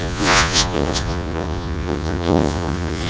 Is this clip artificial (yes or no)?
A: yes